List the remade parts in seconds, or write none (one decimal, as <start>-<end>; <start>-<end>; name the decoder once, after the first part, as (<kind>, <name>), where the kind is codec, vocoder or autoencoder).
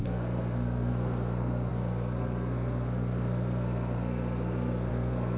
0.0-5.4 (codec, SNAC)